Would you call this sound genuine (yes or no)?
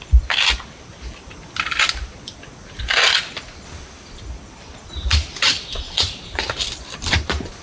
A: no